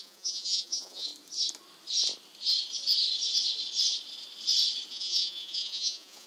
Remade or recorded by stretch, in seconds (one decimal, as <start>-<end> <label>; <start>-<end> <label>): 0.0-1.1 remade; 1.1-4.9 recorded; 4.9-6.3 remade